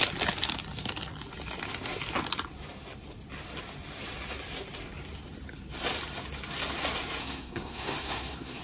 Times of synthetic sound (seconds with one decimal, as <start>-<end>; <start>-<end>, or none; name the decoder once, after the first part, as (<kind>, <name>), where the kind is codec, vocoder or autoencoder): 7.2-8.6 (codec, SNAC)